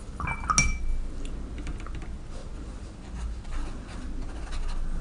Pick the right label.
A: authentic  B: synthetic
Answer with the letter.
A